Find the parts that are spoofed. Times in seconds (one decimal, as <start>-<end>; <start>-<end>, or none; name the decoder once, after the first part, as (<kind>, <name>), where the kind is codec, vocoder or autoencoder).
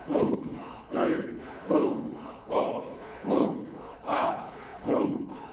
0.0-5.5 (codec, HILCodec)